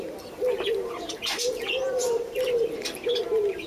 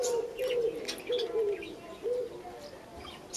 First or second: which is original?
second